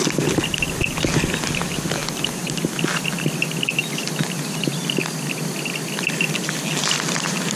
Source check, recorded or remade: recorded